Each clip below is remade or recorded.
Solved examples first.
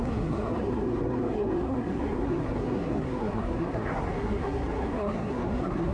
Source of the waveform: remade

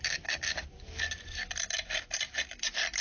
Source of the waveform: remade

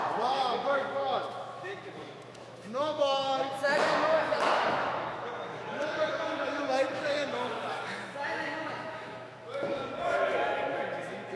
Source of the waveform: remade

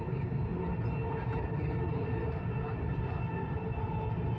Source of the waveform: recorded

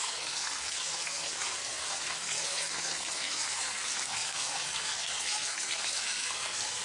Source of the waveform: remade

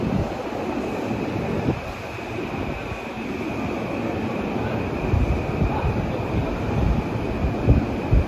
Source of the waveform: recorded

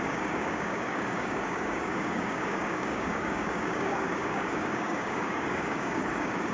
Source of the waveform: remade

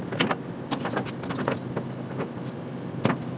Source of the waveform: recorded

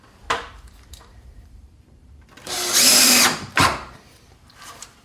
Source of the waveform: remade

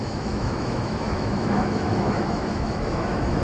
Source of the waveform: remade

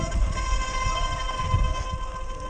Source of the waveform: recorded